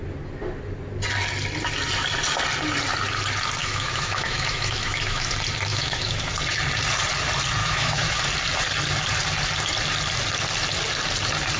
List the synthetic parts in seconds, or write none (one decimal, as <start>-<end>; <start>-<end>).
3.6-5.3; 5.7-6.3; 7.6-8.2